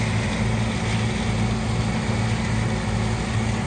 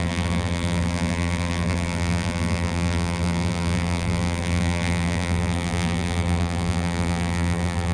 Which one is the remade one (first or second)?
second